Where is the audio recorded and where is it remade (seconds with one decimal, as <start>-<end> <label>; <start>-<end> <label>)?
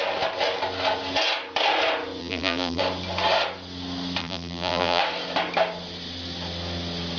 0.0-2.2 recorded; 2.2-2.8 remade; 2.8-4.2 recorded; 4.2-5.0 remade; 5.0-7.2 recorded